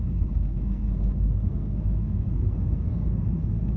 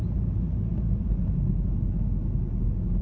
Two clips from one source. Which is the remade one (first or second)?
first